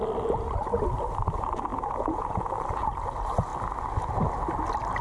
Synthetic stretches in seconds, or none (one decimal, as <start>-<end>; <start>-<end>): 1.7-2.5